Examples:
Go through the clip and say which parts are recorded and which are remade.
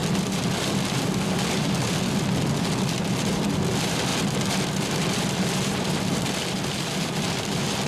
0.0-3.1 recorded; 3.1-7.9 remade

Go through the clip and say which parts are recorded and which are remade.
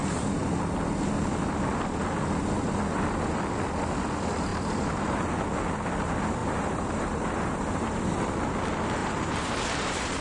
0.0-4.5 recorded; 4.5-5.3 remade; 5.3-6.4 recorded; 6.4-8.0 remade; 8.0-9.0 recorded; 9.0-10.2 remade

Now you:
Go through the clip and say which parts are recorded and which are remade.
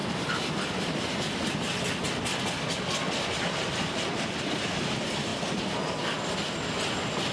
0.0-4.4 recorded; 4.4-5.3 remade; 5.3-7.3 recorded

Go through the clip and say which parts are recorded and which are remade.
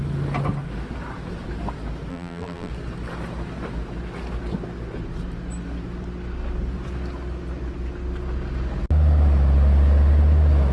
0.0-2.1 recorded; 2.1-2.7 remade; 2.7-10.7 recorded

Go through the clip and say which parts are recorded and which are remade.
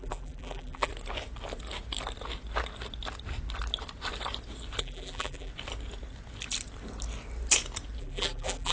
0.0-0.9 remade; 0.9-4.8 recorded; 4.8-5.5 remade; 5.5-8.0 recorded; 8.0-8.7 remade